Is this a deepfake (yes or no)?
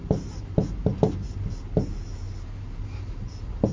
no